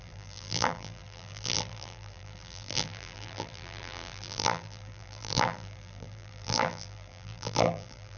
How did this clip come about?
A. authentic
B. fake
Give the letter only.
B